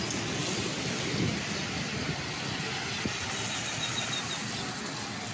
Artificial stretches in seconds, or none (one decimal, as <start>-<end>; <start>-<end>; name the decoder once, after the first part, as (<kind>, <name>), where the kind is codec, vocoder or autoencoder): none